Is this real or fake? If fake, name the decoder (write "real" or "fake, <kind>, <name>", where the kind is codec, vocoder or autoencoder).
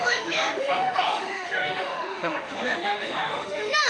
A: fake, autoencoder, DAC-VAE